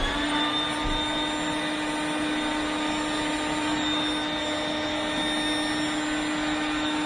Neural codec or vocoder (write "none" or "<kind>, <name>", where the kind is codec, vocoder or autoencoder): none